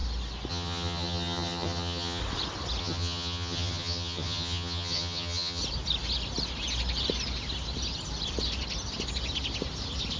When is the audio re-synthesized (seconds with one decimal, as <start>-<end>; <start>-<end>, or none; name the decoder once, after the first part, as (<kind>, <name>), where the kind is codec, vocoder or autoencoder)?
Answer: 0.5-2.2 (vocoder, HiFi-GAN); 2.8-5.6